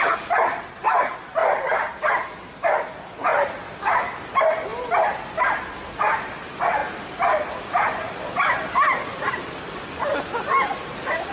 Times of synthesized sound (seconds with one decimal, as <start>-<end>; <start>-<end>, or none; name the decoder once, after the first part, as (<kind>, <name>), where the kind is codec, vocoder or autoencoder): 1.4-2.4 (vocoder, BigVGAN v2); 4.7-5.9